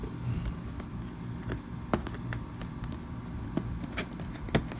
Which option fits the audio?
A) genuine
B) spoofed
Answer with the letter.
A